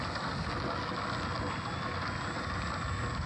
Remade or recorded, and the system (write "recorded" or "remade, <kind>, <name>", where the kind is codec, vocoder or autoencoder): recorded